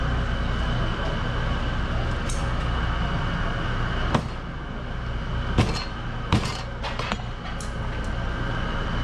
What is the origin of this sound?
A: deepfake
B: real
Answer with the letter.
B